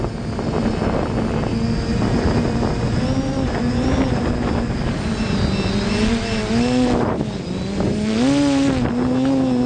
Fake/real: real